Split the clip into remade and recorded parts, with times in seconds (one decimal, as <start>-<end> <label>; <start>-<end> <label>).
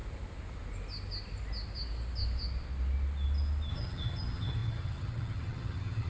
0.0-3.7 recorded; 3.7-6.1 remade